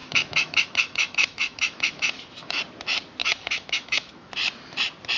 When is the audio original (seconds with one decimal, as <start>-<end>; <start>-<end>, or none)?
2.6-3.2; 4.3-5.2